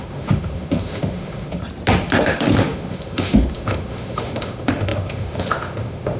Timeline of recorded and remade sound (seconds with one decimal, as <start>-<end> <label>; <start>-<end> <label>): 0.0-1.6 remade; 1.6-2.2 recorded; 2.2-6.2 remade

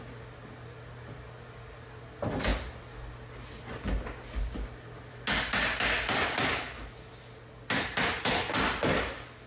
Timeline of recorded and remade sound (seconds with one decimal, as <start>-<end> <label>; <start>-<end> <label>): 0.0-9.5 recorded

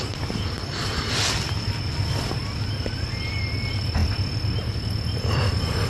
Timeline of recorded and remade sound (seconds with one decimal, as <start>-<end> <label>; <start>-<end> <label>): 0.0-5.9 recorded

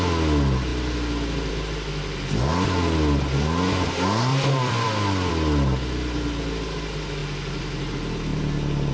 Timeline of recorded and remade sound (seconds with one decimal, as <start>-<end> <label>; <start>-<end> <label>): 0.0-4.3 recorded; 4.3-5.3 remade; 5.3-8.9 recorded

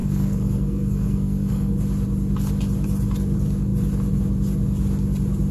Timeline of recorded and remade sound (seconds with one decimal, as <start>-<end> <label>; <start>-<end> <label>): 0.0-1.7 remade; 1.7-5.5 recorded

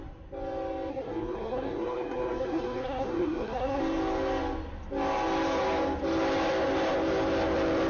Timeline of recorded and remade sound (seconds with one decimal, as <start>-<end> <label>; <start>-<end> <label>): 0.0-0.9 recorded; 0.9-3.8 remade; 3.8-7.9 recorded

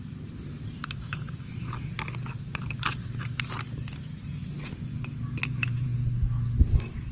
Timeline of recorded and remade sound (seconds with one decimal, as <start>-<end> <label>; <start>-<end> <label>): 0.0-1.5 remade; 1.5-2.3 recorded; 2.3-4.4 remade; 4.4-5.4 recorded; 5.4-5.9 remade; 5.9-7.1 recorded

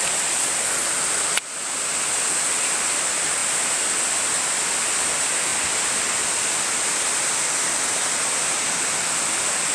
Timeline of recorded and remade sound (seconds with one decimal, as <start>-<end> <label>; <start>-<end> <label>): 0.0-9.7 recorded